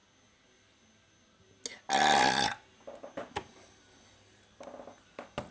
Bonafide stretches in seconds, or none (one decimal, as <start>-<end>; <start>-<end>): 0.0-5.5